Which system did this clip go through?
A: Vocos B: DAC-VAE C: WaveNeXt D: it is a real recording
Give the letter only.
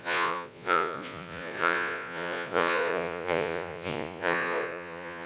A